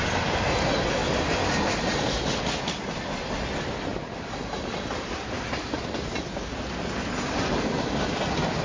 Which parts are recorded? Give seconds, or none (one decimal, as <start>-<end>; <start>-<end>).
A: 0.0-8.6